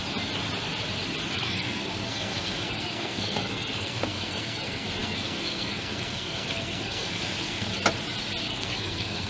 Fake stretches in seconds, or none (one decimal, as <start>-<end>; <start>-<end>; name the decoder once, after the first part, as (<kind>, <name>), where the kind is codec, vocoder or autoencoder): 1.3-7.7 (codec, SNAC); 8.4-9.3